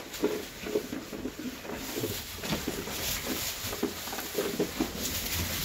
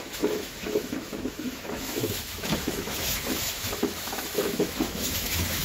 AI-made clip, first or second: second